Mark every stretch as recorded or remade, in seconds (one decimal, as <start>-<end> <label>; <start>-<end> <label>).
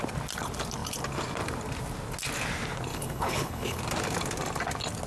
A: 0.0-2.9 recorded; 2.9-3.8 remade; 3.8-5.1 recorded